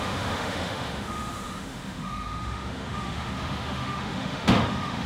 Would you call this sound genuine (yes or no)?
no